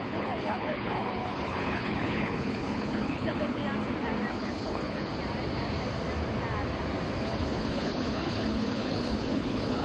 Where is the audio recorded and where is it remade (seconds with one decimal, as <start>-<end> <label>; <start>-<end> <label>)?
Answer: 0.0-3.6 remade; 3.6-4.3 recorded; 4.3-5.1 remade; 5.1-7.2 recorded; 7.2-9.8 remade